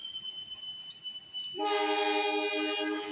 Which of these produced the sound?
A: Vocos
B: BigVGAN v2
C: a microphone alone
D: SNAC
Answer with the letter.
C